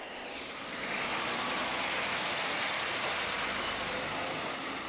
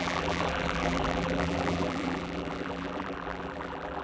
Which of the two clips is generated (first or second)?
second